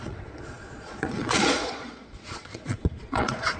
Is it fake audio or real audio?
fake